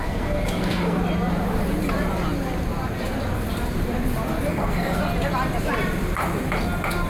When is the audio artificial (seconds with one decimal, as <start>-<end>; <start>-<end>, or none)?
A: 0.0-1.0; 4.5-5.0